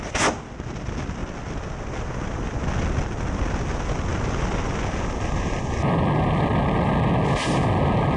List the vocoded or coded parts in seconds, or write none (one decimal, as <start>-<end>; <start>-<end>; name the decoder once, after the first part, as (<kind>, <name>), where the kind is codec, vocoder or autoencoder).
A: none